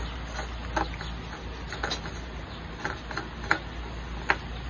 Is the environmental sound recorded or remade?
recorded